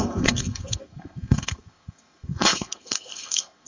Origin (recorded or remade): remade